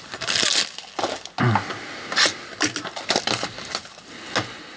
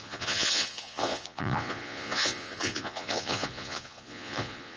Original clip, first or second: first